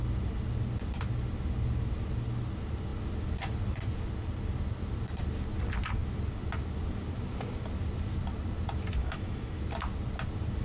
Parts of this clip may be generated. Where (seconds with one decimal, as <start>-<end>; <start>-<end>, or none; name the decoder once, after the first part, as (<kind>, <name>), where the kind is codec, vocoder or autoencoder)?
9.0-9.6 (autoencoder, DAC-VAE)